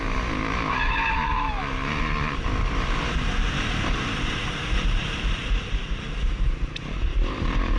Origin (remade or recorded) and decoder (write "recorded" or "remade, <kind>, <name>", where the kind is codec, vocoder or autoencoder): remade, vocoder, BigVGAN v2